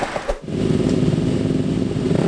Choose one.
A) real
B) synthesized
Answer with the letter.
A